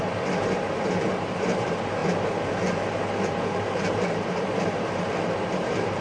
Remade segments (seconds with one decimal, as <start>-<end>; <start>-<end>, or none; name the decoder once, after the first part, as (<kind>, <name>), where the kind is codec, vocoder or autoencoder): 0.0-6.0 (vocoder, BigVGAN v2)